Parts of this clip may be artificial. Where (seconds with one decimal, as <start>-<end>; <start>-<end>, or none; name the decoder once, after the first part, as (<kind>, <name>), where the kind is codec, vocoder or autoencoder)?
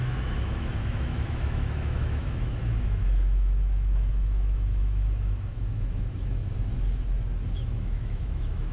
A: 0.0-6.4 (autoencoder, DAC-VAE); 7.5-8.7